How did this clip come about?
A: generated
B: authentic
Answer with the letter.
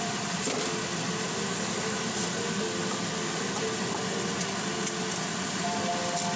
B